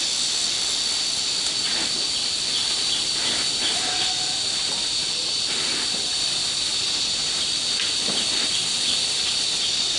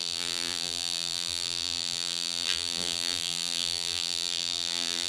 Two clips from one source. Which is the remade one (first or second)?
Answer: second